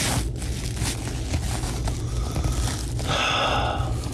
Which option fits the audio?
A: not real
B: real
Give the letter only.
B